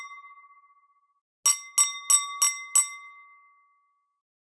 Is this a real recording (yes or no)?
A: yes